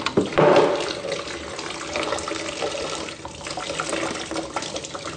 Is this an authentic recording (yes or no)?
yes